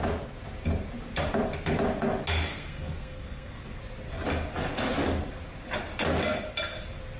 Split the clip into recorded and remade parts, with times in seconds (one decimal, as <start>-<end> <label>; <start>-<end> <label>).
0.0-2.5 recorded; 2.5-3.8 remade; 3.8-7.2 recorded

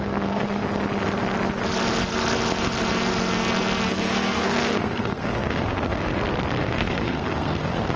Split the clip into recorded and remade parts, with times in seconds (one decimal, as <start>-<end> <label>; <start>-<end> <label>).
0.0-0.6 remade; 0.6-3.9 recorded; 3.9-6.1 remade; 6.1-6.6 recorded; 6.6-8.0 remade